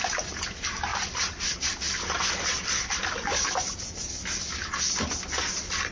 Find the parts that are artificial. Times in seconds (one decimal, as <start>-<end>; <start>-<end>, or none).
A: none